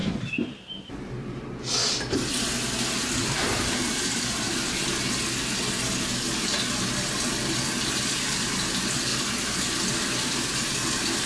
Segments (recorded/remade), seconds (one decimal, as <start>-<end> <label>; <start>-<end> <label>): 0.0-3.2 recorded; 3.2-4.5 remade; 4.5-11.3 recorded